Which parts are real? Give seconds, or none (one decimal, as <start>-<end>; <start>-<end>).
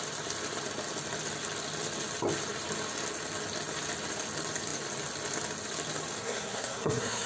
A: 0.0-6.2